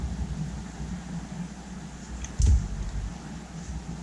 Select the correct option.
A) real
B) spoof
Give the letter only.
A